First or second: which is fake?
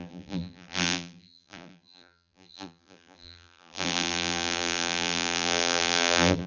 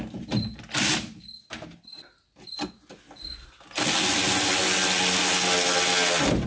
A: first